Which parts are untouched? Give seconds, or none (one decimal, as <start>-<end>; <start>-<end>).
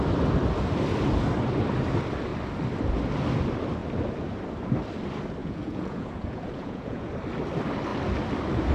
0.0-5.4; 7.1-8.7